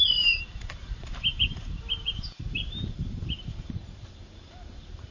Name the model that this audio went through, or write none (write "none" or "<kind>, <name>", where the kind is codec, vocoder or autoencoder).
vocoder, BigVGAN v2